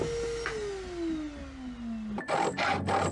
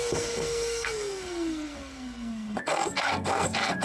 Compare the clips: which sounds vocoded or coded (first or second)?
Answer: second